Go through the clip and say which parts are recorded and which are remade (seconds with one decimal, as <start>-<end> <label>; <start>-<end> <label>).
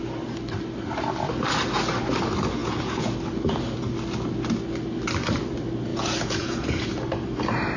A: 0.0-2.6 recorded; 2.6-3.1 remade; 3.1-5.9 recorded; 5.9-6.9 remade; 6.9-7.8 recorded